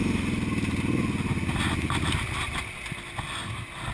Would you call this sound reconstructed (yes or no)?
no